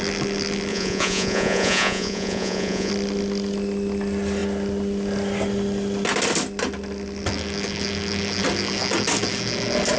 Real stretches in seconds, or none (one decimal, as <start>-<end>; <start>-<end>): 0.0-0.7; 2.9-10.0